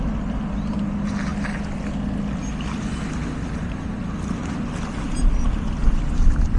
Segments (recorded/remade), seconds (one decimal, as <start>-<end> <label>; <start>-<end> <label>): 0.0-6.6 recorded